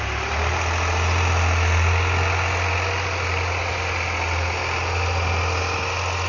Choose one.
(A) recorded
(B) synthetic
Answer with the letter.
A